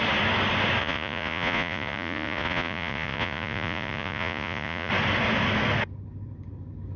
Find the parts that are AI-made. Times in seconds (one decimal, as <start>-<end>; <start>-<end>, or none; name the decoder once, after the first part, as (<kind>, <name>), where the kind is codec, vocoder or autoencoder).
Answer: 0.8-4.9 (vocoder, Vocos)